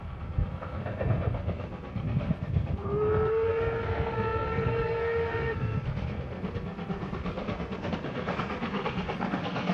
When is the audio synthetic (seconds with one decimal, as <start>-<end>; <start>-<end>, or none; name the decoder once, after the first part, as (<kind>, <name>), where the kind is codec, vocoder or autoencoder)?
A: 0.0-9.7 (codec, SNAC)